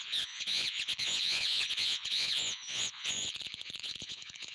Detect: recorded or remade remade